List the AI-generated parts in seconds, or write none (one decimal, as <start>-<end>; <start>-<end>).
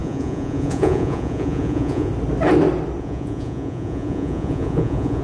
0.0-2.1; 3.0-5.2